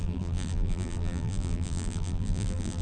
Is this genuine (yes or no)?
no